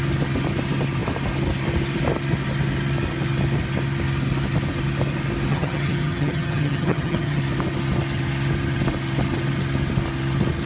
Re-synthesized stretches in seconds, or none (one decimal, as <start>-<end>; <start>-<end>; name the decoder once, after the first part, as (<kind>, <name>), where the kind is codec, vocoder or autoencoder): 5.5-7.4 (vocoder, HiFi-GAN)